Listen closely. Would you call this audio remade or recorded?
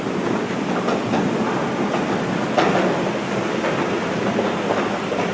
recorded